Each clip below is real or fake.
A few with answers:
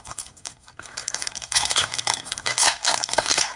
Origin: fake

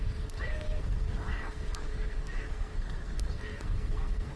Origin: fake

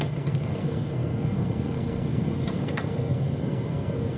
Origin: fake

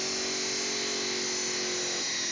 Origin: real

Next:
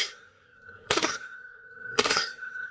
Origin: fake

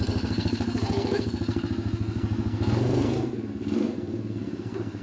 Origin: fake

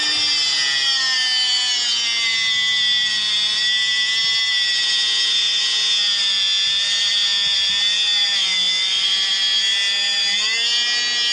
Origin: real